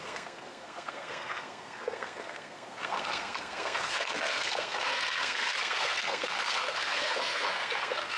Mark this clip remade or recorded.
remade